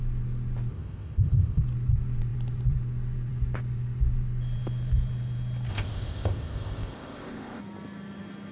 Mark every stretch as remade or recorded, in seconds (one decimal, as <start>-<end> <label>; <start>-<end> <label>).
0.0-0.7 recorded; 0.7-1.6 remade; 1.6-5.7 recorded; 5.7-7.6 remade; 7.6-8.5 recorded